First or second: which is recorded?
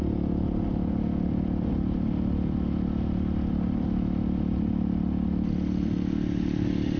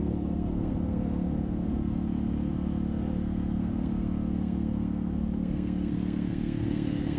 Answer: first